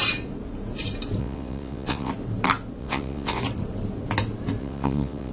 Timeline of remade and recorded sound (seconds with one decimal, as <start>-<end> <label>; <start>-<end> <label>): 0.0-1.2 recorded; 1.2-2.1 remade; 2.1-2.8 recorded; 2.8-3.4 remade; 3.4-4.6 recorded; 4.6-5.3 remade